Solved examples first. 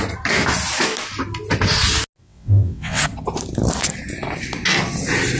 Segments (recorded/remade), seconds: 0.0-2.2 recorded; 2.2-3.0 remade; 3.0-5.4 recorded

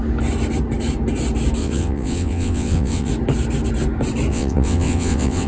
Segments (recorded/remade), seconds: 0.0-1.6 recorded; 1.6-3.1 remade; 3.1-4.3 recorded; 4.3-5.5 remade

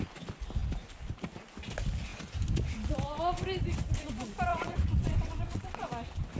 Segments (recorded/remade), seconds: 0.0-4.5 recorded; 4.5-5.9 remade; 5.9-6.4 recorded